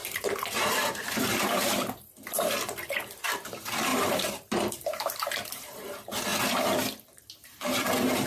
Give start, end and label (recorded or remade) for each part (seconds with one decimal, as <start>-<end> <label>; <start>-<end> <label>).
0.0-6.3 remade; 6.3-7.2 recorded; 7.2-8.3 remade